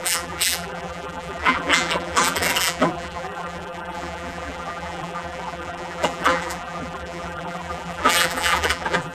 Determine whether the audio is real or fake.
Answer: fake